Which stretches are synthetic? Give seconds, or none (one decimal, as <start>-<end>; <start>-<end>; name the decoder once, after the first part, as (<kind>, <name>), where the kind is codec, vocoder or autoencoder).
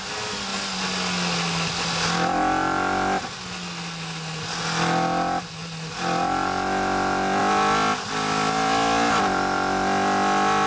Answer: none